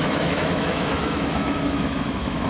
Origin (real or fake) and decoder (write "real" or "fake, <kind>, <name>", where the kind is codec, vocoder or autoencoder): fake, autoencoder, DAC-VAE